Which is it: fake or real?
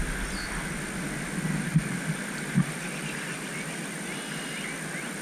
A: real